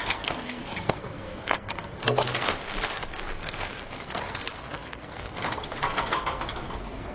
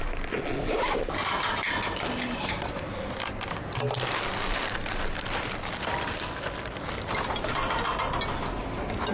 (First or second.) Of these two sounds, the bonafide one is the second